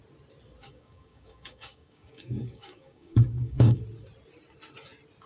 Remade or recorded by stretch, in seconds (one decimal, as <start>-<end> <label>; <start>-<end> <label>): 0.0-0.6 recorded; 0.6-3.8 remade; 3.8-5.3 recorded